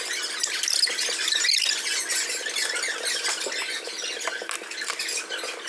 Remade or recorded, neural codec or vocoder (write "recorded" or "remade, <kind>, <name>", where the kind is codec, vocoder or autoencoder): recorded